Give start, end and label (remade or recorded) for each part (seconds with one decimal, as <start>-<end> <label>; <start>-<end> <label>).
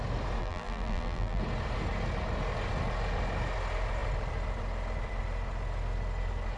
0.0-0.4 recorded; 0.4-1.4 remade; 1.4-6.6 recorded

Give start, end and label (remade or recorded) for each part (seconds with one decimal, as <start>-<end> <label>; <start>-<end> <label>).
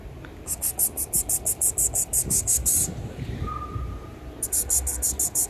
0.0-2.1 recorded; 2.1-4.4 remade; 4.4-5.5 recorded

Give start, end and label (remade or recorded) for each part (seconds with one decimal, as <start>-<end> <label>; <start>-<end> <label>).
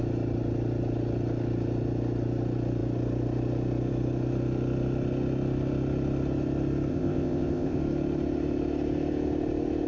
0.0-6.9 recorded; 6.9-7.8 remade; 7.8-9.9 recorded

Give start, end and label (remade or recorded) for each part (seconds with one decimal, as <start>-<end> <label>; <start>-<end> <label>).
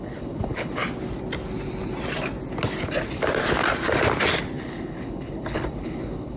0.0-0.8 remade; 0.8-4.6 recorded; 4.6-6.4 remade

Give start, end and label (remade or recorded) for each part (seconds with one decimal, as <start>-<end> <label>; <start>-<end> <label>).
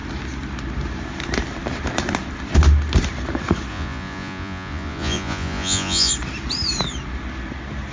0.0-3.7 recorded; 3.7-6.1 remade; 6.1-7.9 recorded